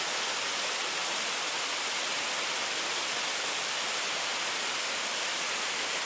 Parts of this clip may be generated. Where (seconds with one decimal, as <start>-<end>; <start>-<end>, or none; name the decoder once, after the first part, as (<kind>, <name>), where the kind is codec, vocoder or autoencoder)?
none